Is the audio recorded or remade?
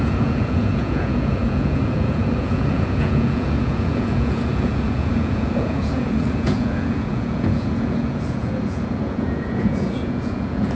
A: remade